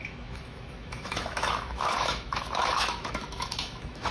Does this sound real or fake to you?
fake